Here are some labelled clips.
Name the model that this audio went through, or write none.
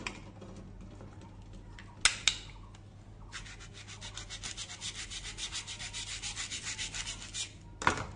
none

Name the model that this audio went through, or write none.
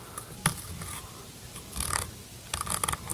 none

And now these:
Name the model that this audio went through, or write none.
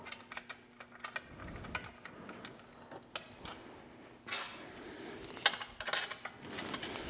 none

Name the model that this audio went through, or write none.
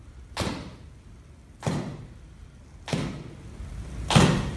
none